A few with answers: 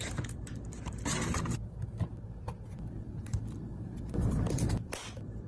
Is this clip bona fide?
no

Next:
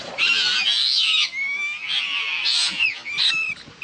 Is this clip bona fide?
no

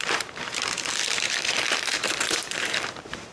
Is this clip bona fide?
no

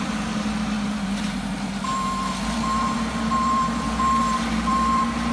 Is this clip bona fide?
no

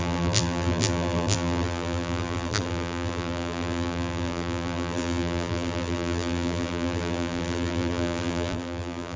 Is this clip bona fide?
no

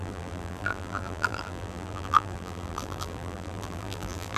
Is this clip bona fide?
no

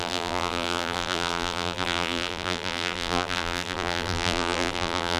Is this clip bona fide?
no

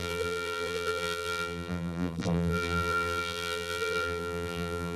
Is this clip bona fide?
no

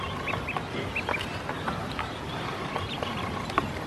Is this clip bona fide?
yes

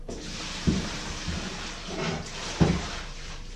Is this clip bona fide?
no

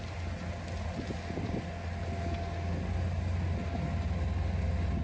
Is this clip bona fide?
yes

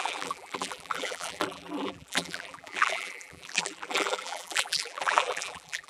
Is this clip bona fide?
no